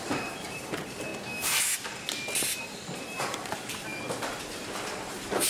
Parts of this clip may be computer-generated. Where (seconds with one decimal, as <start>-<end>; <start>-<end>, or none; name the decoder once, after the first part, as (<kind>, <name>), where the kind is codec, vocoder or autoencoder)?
0.0-1.1 (vocoder, BigVGAN v2); 2.6-3.9; 4.4-5.5